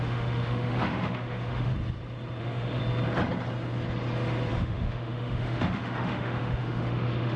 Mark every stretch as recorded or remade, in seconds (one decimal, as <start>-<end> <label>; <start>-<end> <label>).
0.0-1.7 remade; 1.7-2.4 recorded; 2.4-2.8 remade; 2.8-4.5 recorded; 4.5-7.4 remade